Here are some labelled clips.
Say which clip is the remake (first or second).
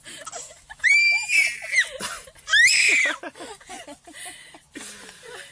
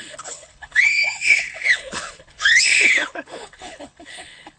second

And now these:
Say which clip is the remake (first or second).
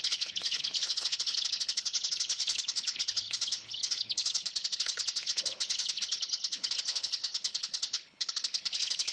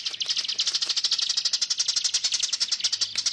first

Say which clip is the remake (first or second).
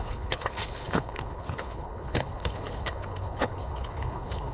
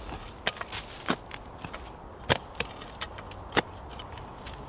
first